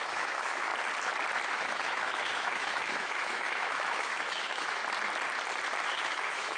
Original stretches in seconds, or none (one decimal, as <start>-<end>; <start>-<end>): 0.7-1.5; 4.8-5.9